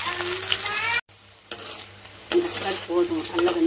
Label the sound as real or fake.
real